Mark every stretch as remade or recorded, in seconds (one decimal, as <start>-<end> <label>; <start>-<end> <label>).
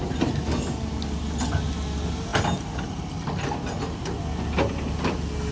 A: 0.0-5.5 recorded